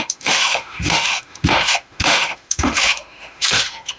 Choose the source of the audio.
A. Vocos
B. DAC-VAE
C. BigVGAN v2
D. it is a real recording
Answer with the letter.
B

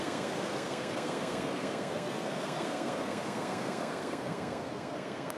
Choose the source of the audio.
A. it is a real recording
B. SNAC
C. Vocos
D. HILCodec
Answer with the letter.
B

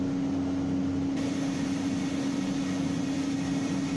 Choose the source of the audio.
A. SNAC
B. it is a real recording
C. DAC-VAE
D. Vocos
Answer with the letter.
B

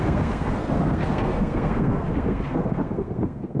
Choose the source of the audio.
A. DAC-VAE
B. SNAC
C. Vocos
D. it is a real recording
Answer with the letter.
B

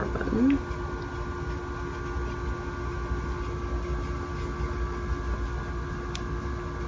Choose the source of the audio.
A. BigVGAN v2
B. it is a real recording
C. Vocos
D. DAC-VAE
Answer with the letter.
B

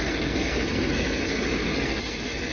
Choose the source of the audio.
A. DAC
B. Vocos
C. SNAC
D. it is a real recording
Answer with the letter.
C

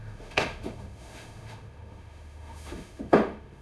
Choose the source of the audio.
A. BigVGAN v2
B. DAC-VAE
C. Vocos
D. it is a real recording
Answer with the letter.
B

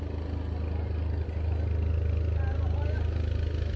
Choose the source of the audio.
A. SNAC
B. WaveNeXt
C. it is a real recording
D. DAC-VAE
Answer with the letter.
C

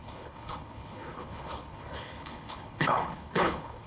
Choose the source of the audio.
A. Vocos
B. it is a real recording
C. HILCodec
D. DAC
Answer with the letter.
C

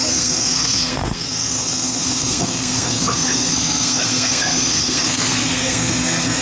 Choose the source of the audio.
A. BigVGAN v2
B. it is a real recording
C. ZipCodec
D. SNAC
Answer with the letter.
D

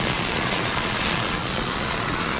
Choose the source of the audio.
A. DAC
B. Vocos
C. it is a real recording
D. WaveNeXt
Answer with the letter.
B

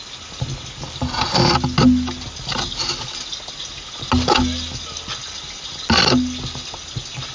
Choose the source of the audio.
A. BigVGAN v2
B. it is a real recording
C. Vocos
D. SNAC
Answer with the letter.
B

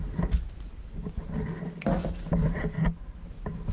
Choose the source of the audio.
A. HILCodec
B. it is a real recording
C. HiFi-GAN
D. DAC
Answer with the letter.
B